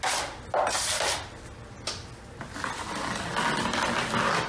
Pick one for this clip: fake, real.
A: real